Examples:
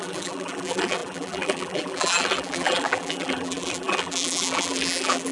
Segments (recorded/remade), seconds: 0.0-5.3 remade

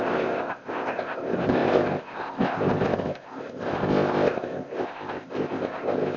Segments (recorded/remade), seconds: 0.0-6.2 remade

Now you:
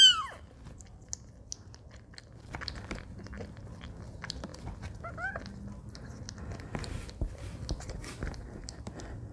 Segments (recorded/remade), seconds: 0.0-9.3 recorded